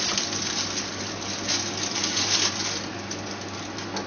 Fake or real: real